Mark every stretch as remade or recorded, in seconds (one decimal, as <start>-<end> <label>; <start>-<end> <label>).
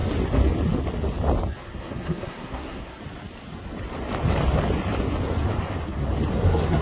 0.0-1.6 recorded; 1.6-3.0 remade; 3.0-6.3 recorded; 6.3-6.8 remade